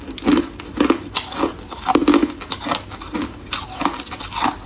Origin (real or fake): real